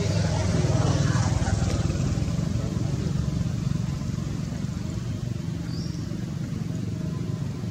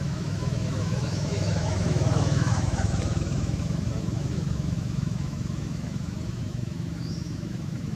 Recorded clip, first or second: first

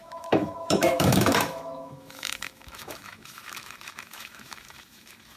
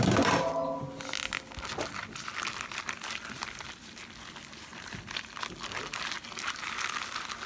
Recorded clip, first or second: second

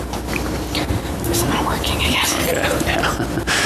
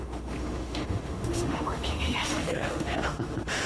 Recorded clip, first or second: first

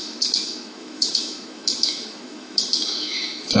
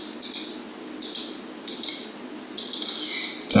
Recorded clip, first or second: second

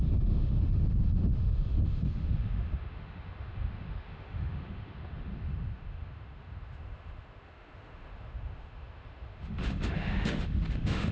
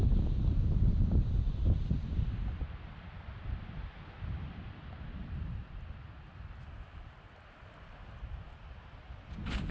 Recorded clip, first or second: second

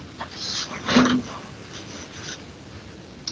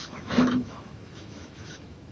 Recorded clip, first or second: first